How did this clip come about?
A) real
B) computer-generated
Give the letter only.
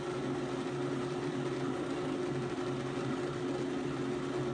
A